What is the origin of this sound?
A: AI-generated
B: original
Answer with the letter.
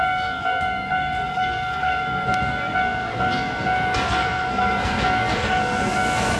A